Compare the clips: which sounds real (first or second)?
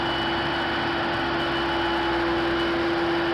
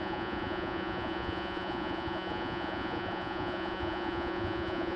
first